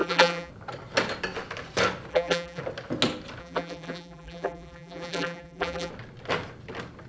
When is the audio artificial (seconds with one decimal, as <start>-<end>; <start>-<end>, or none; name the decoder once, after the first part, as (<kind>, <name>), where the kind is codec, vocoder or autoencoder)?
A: 0.0-0.5 (vocoder, BigVGAN v2); 2.1-2.6; 3.4-5.9